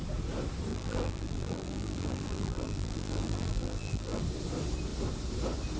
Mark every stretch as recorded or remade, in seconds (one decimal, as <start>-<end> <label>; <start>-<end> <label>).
0.0-0.7 recorded; 0.7-4.2 remade; 4.2-5.8 recorded